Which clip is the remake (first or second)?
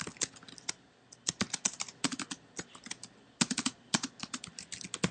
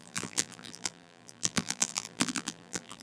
second